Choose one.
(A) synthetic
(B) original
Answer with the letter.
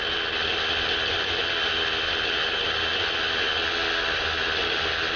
B